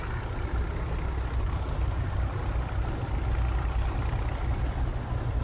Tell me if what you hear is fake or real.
real